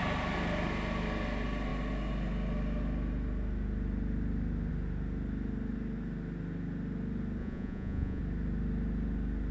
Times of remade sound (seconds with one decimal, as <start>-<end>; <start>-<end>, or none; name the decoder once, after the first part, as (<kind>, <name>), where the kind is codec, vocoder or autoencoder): 7.4-8.2 (vocoder, Vocos)